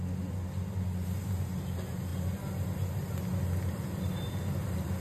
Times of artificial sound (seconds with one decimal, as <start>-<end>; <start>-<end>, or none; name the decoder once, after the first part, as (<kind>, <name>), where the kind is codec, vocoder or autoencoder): none